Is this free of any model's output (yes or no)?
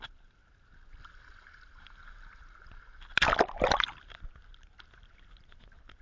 yes